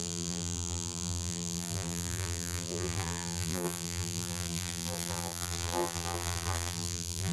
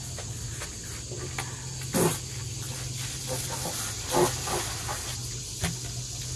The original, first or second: second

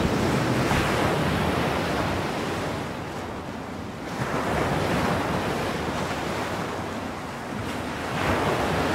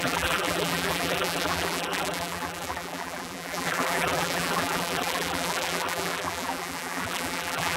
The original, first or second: first